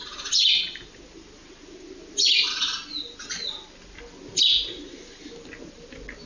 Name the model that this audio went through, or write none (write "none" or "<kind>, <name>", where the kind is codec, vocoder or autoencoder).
none